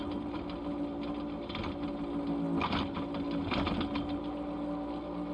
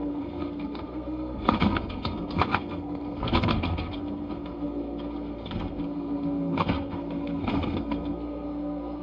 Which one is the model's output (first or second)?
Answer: second